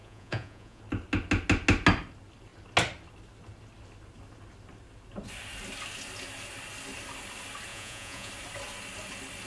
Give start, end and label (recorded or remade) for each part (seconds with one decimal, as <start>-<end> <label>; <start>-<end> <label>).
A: 0.0-0.8 remade; 0.8-7.7 recorded; 7.7-8.3 remade; 8.3-9.5 recorded